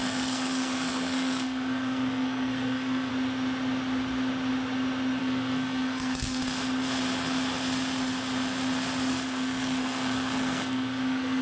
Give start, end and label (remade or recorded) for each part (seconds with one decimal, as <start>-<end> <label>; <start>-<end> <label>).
0.0-3.1 remade; 3.1-5.2 recorded; 5.2-6.4 remade; 6.4-9.1 recorded; 9.1-11.4 remade

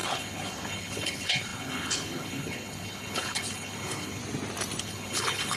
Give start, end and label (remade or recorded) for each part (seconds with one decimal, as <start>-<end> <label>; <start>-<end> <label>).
0.0-4.2 remade; 4.2-4.8 recorded; 4.8-5.6 remade

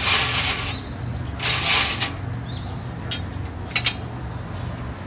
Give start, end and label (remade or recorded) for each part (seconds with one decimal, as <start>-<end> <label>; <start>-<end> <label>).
0.0-5.1 recorded

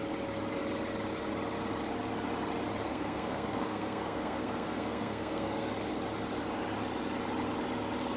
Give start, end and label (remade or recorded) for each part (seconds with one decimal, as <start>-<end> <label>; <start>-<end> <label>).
0.0-2.8 recorded; 2.8-5.7 remade; 5.7-8.2 recorded

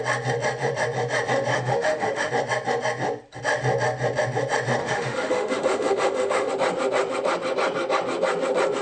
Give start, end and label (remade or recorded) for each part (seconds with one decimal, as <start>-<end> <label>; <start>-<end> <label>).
0.0-1.5 recorded; 1.5-2.3 remade; 2.3-4.8 recorded; 4.8-6.5 remade; 6.5-8.8 recorded

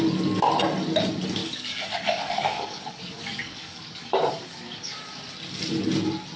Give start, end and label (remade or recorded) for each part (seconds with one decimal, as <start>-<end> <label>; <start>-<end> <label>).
0.0-1.4 recorded; 1.4-5.2 remade; 5.2-6.4 recorded

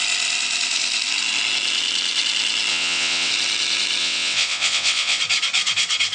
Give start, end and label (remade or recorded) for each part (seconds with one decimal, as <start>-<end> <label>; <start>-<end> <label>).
0.0-2.7 recorded; 2.7-3.3 remade; 3.3-4.0 recorded; 4.0-5.2 remade; 5.2-6.1 recorded